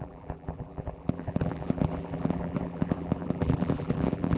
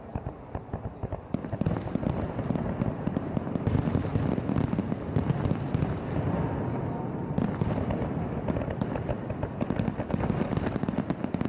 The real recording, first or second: second